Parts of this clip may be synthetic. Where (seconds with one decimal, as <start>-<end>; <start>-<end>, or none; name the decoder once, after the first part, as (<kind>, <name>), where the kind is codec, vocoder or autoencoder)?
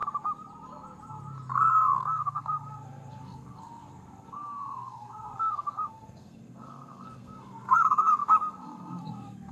1.7-9.5 (codec, SNAC)